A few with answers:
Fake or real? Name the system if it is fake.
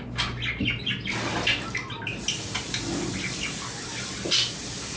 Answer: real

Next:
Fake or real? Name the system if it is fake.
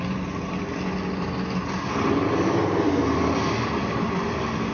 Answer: real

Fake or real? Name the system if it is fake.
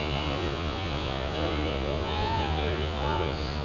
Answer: fake, vocoder, Vocos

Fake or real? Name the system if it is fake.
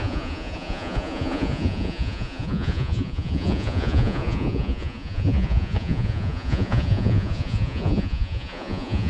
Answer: fake, vocoder, Vocos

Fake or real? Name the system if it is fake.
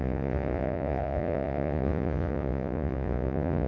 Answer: fake, vocoder, Vocos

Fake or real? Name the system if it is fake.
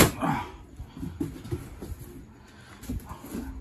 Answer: real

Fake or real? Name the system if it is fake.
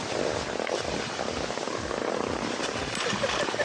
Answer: real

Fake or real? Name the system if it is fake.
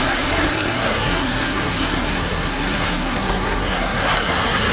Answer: fake, codec, SNAC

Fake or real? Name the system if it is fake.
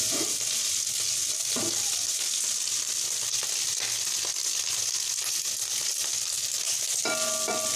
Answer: real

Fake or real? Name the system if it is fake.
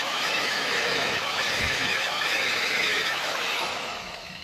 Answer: fake, autoencoder, DAC-VAE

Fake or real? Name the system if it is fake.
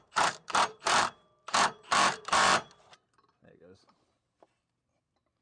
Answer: fake, vocoder, BigVGAN v2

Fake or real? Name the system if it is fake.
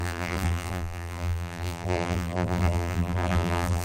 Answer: fake, vocoder, BigVGAN v2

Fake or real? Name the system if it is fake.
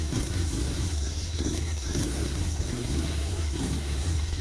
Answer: fake, codec, SNAC